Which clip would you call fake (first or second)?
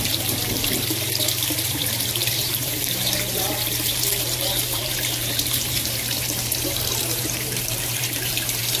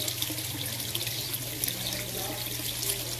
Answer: first